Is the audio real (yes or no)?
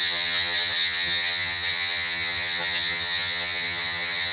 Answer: no